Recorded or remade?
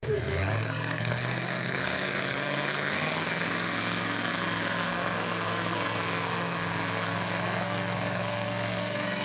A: remade